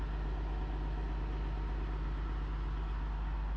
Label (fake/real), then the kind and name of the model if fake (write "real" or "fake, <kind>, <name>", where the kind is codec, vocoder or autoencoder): real